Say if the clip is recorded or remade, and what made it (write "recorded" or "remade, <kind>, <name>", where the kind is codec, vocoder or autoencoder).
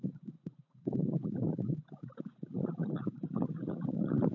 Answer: remade, vocoder, Vocos